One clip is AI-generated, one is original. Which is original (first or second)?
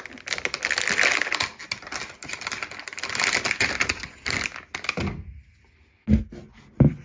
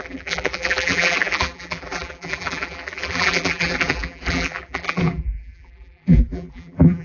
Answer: first